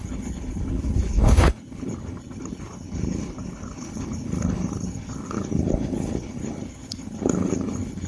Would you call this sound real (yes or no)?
no